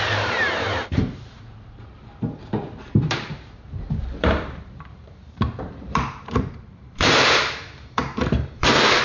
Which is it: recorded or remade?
remade